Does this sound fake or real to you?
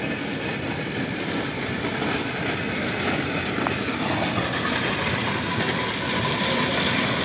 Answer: real